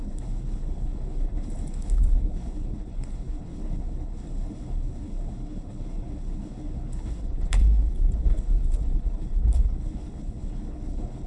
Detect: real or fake fake